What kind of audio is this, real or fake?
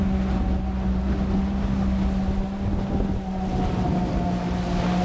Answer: real